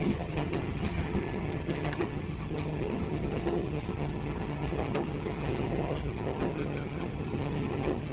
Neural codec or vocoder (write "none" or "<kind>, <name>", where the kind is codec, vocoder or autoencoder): vocoder, HiFi-GAN